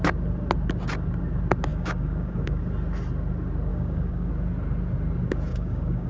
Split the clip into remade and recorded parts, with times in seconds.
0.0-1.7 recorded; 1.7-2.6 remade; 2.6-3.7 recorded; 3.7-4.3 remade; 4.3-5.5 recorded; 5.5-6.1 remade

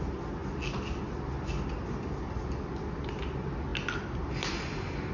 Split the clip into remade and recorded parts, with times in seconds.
0.0-5.1 recorded

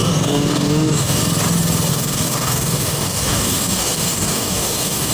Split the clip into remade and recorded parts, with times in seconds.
0.0-1.2 remade; 1.2-1.9 recorded; 1.9-5.1 remade